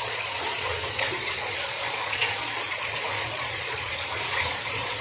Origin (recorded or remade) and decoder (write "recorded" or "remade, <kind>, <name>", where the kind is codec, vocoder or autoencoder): remade, vocoder, Vocos